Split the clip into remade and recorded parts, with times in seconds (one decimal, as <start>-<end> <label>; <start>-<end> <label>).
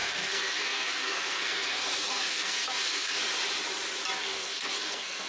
0.0-3.2 remade; 3.2-4.2 recorded; 4.2-5.3 remade